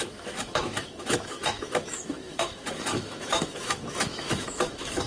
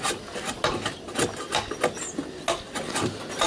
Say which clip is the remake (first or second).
first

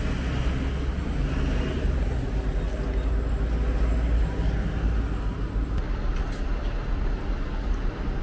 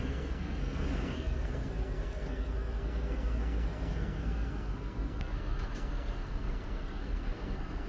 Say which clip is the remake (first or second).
second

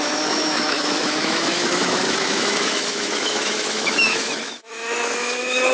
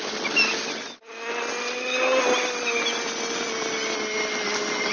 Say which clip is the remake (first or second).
first